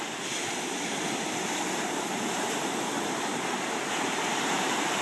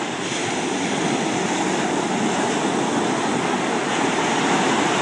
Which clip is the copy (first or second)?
first